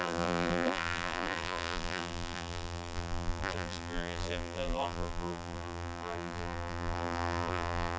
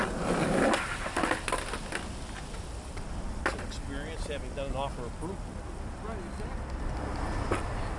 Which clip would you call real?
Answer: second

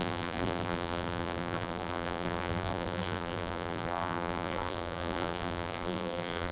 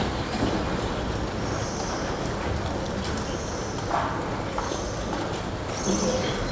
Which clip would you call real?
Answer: second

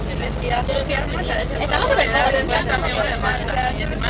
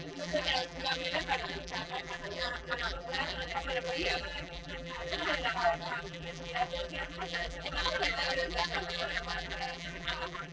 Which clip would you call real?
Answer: first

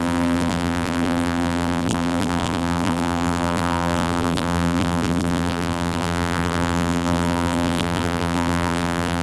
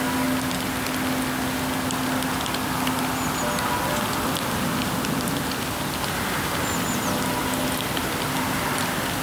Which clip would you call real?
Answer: second